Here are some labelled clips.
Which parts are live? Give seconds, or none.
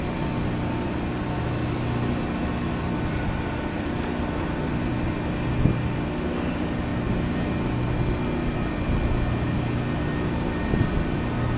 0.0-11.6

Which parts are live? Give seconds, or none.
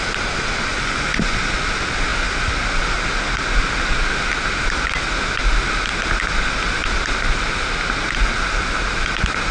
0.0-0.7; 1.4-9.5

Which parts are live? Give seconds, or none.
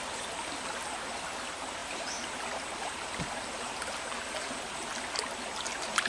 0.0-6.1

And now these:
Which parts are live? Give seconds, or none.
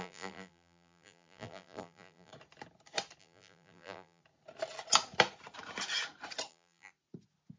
2.3-3.2; 4.2-6.5; 6.9-7.6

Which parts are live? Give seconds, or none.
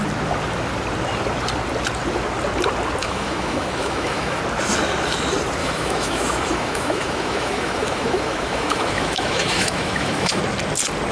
0.0-3.0; 4.4-5.6; 10.4-11.1